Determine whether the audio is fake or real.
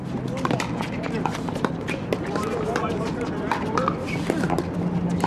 real